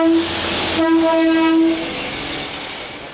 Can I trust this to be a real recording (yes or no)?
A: yes